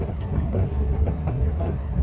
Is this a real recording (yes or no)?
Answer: no